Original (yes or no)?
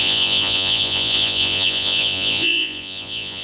no